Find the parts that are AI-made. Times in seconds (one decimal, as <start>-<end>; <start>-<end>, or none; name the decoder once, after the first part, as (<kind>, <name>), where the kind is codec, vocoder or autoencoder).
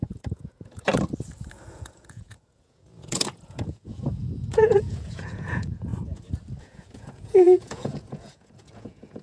0.0-0.9 (vocoder, Vocos); 1.7-5.9; 6.6-9.2